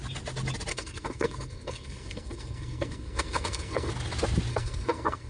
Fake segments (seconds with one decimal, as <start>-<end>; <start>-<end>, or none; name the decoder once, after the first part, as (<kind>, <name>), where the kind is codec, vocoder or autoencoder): 0.7-3.9 (codec, SNAC); 4.5-5.3